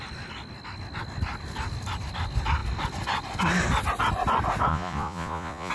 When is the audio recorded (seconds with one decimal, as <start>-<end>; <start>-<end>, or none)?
0.0-4.7